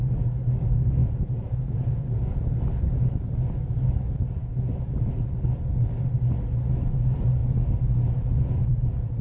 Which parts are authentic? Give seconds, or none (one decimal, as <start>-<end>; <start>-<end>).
0.0-1.0; 2.6-4.4; 5.1-7.4